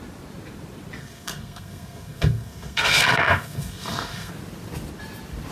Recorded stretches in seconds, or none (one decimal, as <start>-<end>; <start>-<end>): 0.0-1.0; 4.3-5.5